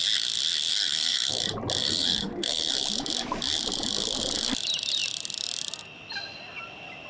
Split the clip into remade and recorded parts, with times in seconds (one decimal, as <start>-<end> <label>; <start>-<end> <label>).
0.0-0.7 recorded; 0.7-1.4 remade; 1.4-1.8 recorded; 1.8-2.7 remade; 2.7-7.1 recorded